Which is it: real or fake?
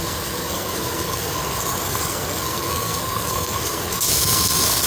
fake